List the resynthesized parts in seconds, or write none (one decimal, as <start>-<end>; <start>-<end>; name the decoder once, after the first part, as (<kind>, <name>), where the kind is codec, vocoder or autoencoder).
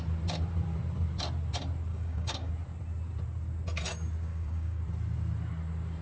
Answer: 1.9-2.5 (codec, DAC); 4.3-4.8